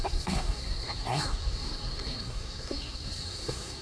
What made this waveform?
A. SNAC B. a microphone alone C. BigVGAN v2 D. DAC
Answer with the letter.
A